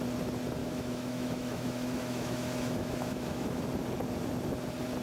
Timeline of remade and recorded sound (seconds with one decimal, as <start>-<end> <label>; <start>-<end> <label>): 0.0-0.6 recorded; 0.6-3.6 remade; 3.6-5.0 recorded